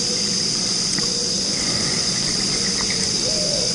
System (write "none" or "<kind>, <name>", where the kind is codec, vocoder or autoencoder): vocoder, Vocos